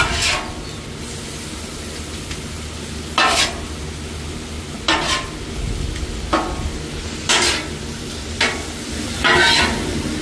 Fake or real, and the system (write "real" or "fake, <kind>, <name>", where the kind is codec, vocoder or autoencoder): real